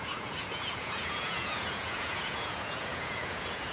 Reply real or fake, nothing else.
fake